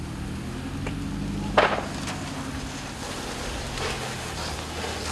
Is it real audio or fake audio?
real